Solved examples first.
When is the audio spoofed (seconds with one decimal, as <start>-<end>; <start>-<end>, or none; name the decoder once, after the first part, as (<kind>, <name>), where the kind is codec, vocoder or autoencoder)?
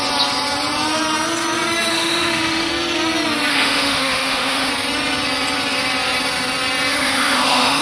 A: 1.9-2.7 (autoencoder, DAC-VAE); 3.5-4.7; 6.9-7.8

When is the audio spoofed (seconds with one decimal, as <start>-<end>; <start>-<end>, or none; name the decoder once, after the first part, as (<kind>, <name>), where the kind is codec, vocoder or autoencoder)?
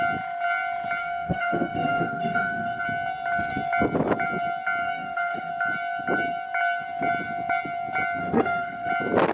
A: 1.0-2.8 (codec, SNAC); 4.8-5.5; 8.2-8.9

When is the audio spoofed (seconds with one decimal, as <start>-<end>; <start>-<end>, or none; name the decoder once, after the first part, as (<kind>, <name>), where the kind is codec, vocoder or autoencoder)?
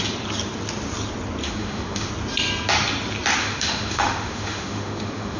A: 1.4-2.1 (autoencoder, DAC-VAE); 3.4-5.4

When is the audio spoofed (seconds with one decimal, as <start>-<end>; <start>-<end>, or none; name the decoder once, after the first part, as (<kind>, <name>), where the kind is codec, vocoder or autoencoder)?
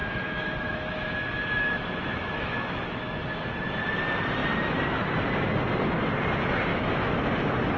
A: 0.0-3.2 (autoencoder, DAC-VAE); 6.7-7.3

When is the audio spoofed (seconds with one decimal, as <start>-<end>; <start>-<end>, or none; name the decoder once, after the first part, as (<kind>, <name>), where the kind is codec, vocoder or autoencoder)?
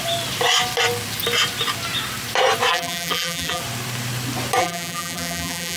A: 2.7-3.6 (vocoder, BigVGAN v2); 4.6-5.8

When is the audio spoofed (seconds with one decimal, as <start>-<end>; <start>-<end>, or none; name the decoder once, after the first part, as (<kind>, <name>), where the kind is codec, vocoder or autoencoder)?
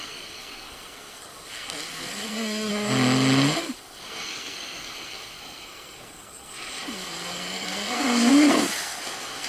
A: 0.0-2.7 (codec, SNAC); 3.6-9.5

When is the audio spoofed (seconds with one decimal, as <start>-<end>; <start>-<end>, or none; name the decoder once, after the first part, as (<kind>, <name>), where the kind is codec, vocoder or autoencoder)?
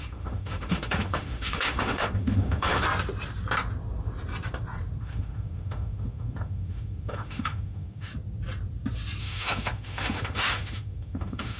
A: 0.0-2.8 (autoencoder, DAC-VAE); 5.0-8.1; 9.2-11.6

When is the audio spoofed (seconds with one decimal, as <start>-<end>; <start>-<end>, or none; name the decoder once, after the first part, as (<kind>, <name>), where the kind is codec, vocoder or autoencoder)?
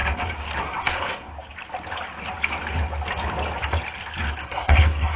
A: 0.6-1.3 (codec, SNAC); 4.4-5.2